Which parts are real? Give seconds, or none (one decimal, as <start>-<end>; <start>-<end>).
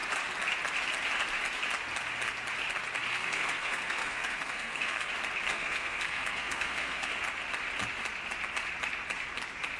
0.0-3.1; 5.1-5.5; 7.1-9.8